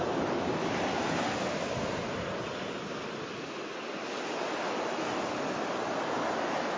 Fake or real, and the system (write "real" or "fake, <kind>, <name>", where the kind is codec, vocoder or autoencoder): real